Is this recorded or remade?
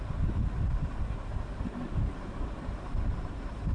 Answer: remade